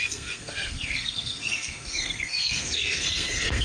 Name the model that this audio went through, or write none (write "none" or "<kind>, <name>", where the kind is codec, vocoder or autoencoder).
codec, SNAC